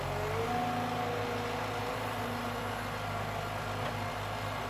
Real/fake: real